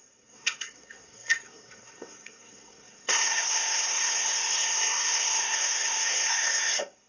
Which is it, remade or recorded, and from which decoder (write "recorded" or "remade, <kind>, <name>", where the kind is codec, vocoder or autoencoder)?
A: remade, codec, SNAC